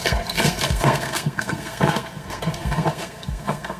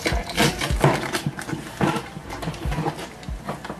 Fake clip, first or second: first